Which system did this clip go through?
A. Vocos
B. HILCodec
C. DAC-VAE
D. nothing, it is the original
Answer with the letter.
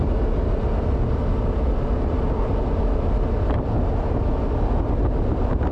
D